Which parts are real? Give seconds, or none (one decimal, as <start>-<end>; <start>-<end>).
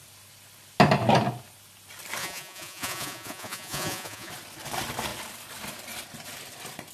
0.0-2.2; 4.3-6.9